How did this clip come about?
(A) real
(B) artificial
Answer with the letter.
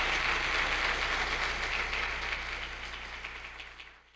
A